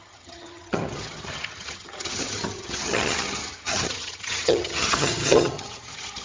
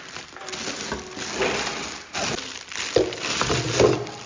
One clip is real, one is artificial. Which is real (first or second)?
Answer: second